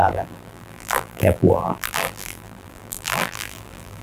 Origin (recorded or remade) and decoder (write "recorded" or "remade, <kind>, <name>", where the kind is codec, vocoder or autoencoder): remade, vocoder, BigVGAN v2